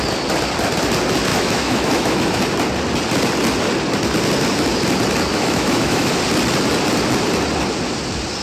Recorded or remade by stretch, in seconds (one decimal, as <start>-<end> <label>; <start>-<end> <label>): 0.0-1.3 recorded; 1.3-2.4 remade; 2.4-5.3 recorded; 5.3-6.2 remade; 6.2-8.4 recorded